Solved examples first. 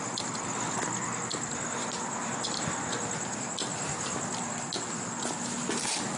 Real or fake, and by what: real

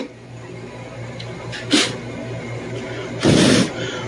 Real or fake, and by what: real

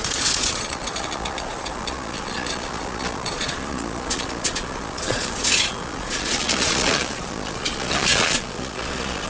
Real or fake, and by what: fake, vocoder, Vocos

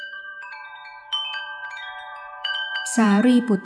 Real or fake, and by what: fake, vocoder, Vocos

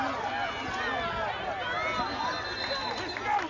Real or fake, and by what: real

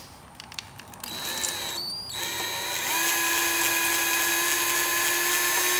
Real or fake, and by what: real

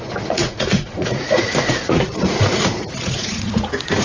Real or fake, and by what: fake, vocoder, Vocos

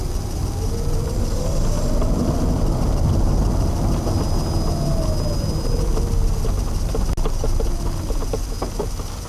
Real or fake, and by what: real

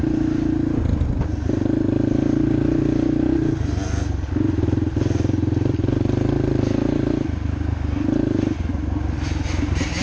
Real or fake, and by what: real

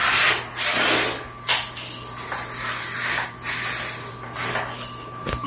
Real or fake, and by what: real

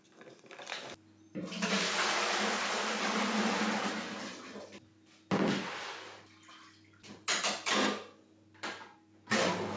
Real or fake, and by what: real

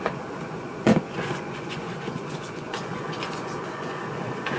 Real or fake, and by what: fake, vocoder, Vocos